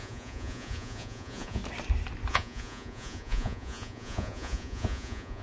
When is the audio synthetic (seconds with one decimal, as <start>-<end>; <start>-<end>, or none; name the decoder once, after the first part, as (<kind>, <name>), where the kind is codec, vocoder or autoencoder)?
0.0-1.6 (vocoder, Vocos); 2.3-5.4